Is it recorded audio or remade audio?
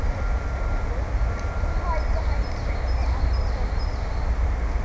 recorded